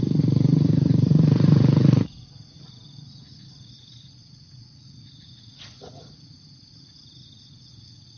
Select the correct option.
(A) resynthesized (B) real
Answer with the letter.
A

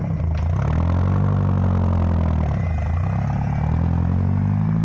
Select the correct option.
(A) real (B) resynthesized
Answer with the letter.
A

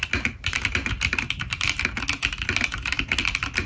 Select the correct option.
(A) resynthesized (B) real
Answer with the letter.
B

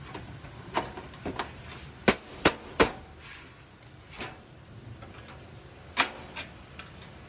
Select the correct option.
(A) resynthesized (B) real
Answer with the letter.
B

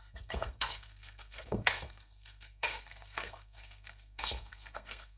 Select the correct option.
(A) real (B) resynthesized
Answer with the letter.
B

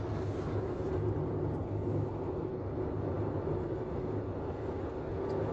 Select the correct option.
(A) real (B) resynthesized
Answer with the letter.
A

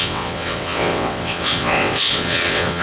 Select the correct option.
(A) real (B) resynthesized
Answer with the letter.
B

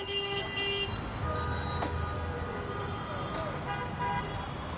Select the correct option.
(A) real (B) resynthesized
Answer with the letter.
A